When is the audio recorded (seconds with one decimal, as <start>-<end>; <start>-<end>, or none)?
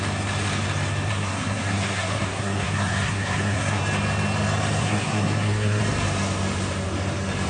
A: 0.0-1.1; 3.8-4.8; 5.8-7.5